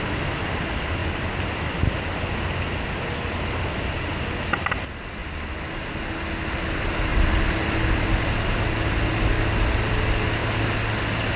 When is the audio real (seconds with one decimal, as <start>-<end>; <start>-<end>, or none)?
0.0-11.4